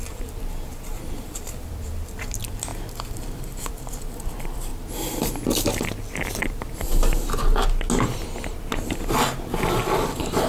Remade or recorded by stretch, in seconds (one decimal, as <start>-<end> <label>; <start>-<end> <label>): 0.0-4.7 remade; 4.7-6.4 recorded; 6.4-6.9 remade; 6.9-9.8 recorded; 9.8-10.5 remade